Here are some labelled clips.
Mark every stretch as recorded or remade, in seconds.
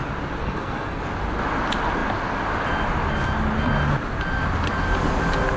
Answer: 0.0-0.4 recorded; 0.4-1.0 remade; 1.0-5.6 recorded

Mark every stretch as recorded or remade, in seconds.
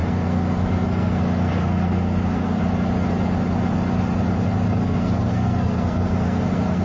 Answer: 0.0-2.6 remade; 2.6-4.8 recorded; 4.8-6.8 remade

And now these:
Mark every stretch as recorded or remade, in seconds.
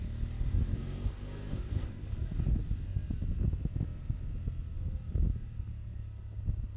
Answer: 0.0-0.7 recorded; 0.7-2.6 remade; 2.6-6.8 recorded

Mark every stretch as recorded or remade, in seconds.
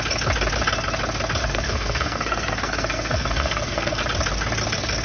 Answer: 0.0-1.4 recorded; 1.4-4.0 remade; 4.0-5.0 recorded